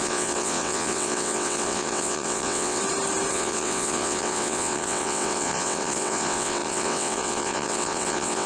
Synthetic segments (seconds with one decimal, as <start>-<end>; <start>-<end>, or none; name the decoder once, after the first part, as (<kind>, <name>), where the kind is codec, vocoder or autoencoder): 0.0-2.8 (vocoder, WaveNeXt); 3.3-8.5